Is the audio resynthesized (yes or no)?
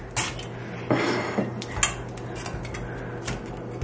no